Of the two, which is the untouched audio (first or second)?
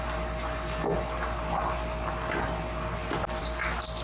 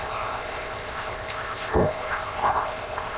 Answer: first